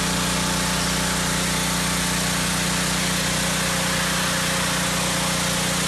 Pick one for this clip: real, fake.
real